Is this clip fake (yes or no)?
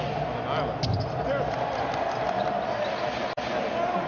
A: no